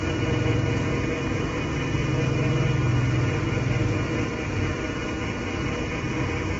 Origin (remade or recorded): recorded